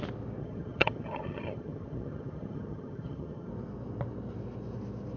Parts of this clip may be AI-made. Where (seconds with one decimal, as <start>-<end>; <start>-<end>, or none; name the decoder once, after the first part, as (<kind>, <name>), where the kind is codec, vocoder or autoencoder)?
0.4-3.5 (vocoder, HiFi-GAN)